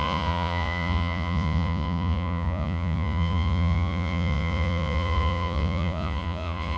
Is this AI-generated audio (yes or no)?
yes